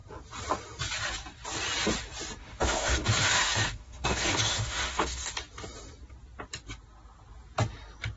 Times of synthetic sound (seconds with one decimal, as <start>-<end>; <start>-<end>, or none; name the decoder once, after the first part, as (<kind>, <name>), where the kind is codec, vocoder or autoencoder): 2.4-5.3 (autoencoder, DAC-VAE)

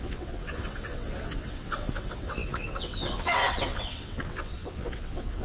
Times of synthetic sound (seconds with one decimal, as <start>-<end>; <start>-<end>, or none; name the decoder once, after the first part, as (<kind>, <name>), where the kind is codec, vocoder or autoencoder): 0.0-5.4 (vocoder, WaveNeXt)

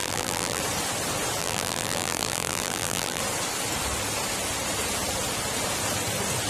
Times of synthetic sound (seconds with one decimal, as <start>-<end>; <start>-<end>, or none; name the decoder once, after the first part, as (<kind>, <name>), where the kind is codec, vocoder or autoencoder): 0.0-0.6 (vocoder, BigVGAN v2); 1.4-3.2

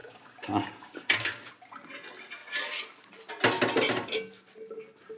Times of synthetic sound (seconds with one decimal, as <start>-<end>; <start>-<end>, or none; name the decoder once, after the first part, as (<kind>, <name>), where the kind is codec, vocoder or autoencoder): 0.0-1.5 (codec, DAC)